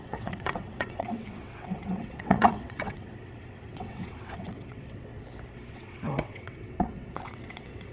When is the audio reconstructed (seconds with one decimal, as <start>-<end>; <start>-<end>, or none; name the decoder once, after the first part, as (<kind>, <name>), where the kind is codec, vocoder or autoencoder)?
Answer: 0.0-5.1 (vocoder, WaveNeXt); 5.7-7.9